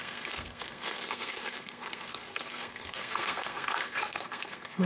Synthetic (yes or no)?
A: yes